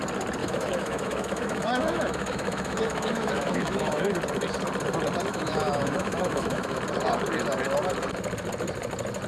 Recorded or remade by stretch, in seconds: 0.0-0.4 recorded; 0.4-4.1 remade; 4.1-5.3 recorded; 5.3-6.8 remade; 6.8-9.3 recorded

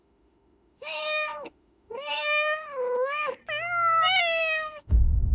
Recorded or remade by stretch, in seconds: 0.0-3.4 remade; 3.4-4.2 recorded; 4.2-5.3 remade

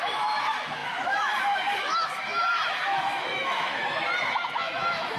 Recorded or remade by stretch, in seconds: 0.0-3.8 remade; 3.8-4.5 recorded; 4.5-5.2 remade

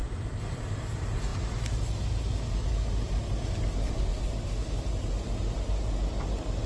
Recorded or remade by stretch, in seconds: 0.0-6.7 recorded

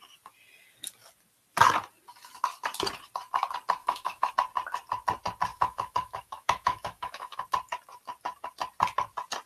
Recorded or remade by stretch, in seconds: 0.0-3.8 recorded; 3.8-4.3 remade; 4.3-5.5 recorded; 5.5-7.4 remade; 7.4-9.5 recorded

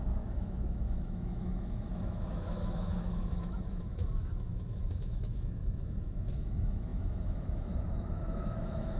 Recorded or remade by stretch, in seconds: 0.0-9.0 remade